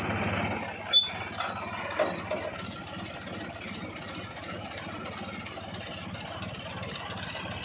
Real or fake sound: real